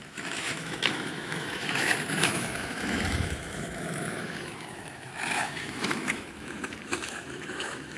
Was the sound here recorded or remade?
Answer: remade